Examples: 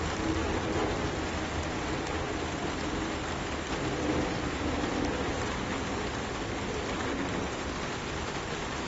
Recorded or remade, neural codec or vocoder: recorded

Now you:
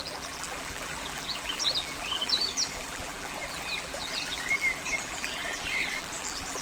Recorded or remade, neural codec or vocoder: remade, vocoder, BigVGAN v2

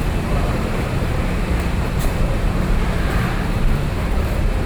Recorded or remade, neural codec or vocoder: remade, vocoder, BigVGAN v2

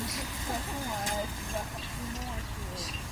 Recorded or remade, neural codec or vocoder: recorded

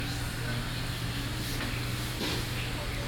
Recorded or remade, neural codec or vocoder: recorded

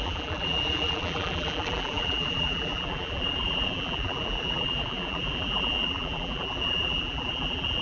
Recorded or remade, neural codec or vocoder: remade, vocoder, BigVGAN v2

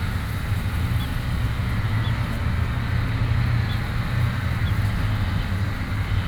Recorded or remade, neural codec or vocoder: recorded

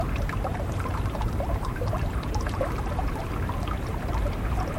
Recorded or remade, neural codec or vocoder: remade, vocoder, BigVGAN v2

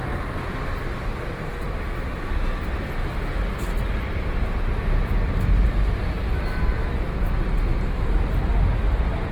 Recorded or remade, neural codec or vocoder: recorded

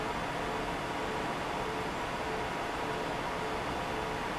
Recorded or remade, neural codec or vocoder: recorded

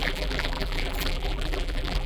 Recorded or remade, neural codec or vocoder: remade, vocoder, BigVGAN v2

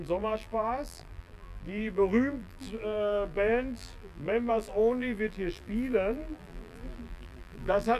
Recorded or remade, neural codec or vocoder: remade, vocoder, BigVGAN v2